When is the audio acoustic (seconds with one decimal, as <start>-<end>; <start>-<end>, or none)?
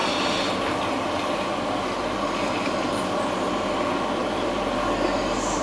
0.0-5.6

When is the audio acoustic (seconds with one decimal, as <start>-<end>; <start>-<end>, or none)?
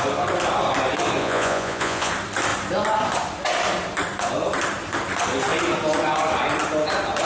0.0-1.2; 2.1-7.3